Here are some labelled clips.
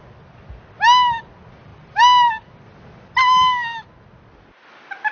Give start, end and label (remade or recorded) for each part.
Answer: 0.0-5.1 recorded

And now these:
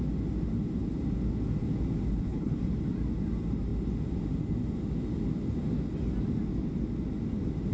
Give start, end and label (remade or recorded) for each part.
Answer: 0.0-2.1 recorded; 2.1-2.6 remade; 2.6-7.7 recorded

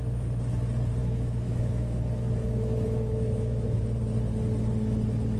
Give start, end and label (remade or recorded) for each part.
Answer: 0.0-1.0 recorded; 1.0-3.8 remade; 3.8-5.4 recorded

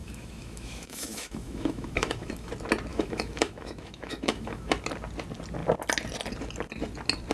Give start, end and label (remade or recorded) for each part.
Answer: 0.0-2.5 remade; 2.5-2.9 recorded; 2.9-4.7 remade; 4.7-7.3 recorded

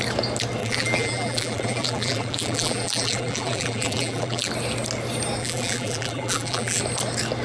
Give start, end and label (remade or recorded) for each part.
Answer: 0.0-0.6 recorded; 0.6-4.5 remade; 4.5-5.4 recorded; 5.4-6.8 remade; 6.8-7.4 recorded

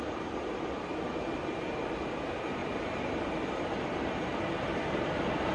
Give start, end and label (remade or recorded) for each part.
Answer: 0.0-5.5 recorded